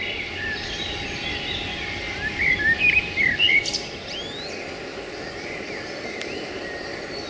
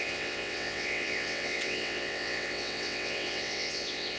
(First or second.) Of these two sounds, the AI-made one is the second